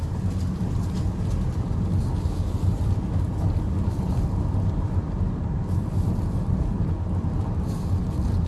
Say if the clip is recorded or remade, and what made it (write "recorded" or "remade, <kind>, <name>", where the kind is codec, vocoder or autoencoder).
recorded